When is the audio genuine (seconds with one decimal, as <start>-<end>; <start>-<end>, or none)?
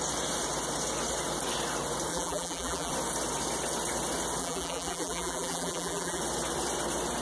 0.0-2.1; 2.9-4.4; 6.2-7.2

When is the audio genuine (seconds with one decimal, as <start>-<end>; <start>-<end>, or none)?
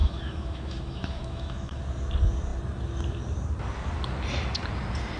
1.8-5.2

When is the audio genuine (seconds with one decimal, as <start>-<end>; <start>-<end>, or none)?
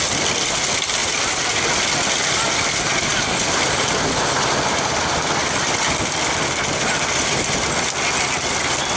0.0-1.0; 1.6-9.0